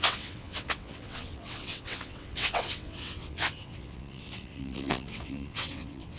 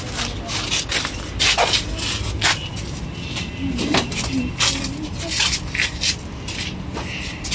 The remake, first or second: first